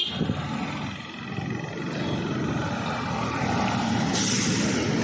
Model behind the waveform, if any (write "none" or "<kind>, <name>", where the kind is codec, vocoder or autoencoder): none